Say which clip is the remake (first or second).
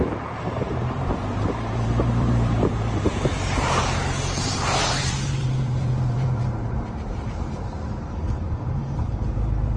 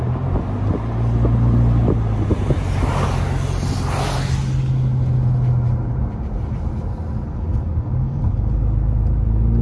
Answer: first